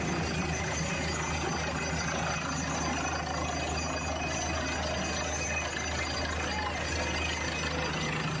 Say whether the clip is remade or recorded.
recorded